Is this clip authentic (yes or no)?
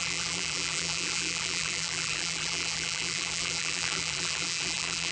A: no